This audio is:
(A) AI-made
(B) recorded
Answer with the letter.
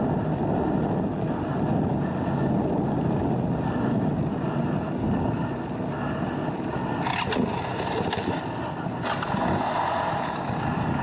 B